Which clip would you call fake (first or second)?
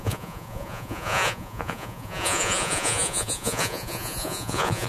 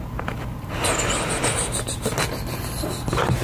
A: first